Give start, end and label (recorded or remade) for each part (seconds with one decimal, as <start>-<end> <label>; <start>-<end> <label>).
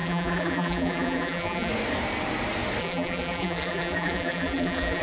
0.0-1.7 remade; 1.7-2.8 recorded; 2.8-5.0 remade